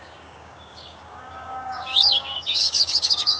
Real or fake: fake